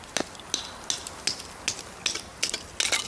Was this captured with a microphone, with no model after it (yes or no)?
yes